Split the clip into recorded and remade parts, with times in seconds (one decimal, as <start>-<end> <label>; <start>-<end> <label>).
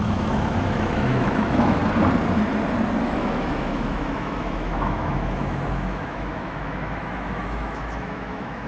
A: 0.0-1.8 remade; 1.8-3.0 recorded; 3.0-8.7 remade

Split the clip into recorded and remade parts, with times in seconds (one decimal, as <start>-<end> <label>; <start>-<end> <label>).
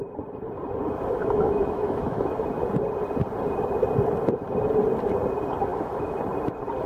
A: 0.0-1.2 recorded; 1.2-2.4 remade; 2.4-5.7 recorded; 5.7-6.2 remade; 6.2-6.9 recorded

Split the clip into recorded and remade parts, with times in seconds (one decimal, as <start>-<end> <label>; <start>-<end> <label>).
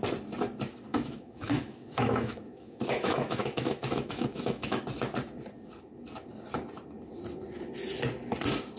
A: 0.0-0.9 recorded; 0.9-4.8 remade; 4.8-8.8 recorded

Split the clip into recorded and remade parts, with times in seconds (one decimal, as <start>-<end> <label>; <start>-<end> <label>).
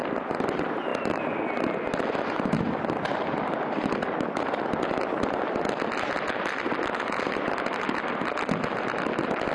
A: 0.0-9.5 recorded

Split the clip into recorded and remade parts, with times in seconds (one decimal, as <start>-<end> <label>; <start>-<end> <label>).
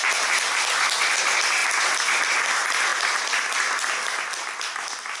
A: 0.0-5.2 recorded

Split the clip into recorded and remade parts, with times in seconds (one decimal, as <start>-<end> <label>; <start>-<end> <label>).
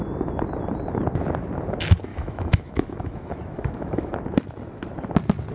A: 0.0-2.1 recorded; 2.1-4.1 remade; 4.1-5.5 recorded